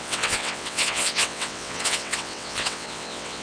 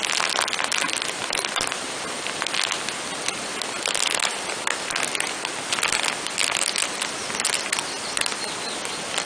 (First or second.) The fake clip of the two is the first